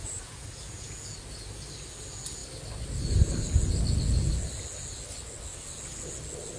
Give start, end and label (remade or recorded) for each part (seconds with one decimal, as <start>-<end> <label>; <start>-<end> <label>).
0.0-1.0 remade; 1.0-6.6 recorded